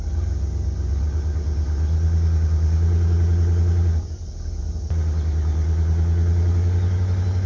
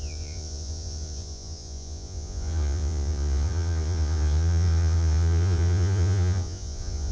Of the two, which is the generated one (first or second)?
second